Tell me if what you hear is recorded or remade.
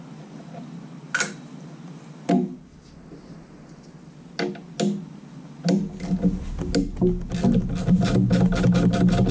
recorded